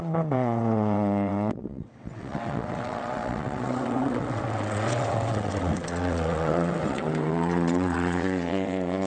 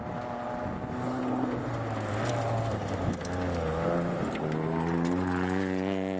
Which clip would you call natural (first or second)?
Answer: second